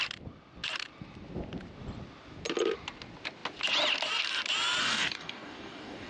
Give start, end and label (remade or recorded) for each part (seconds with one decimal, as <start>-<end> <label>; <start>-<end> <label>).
0.0-4.8 recorded; 4.8-6.1 remade